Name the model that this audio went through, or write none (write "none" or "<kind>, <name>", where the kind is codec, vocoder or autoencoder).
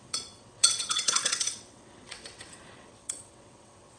vocoder, WaveNeXt